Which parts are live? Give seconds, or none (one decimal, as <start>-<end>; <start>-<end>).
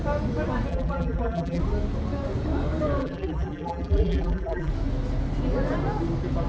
0.0-0.7; 1.6-3.0; 4.7-6.5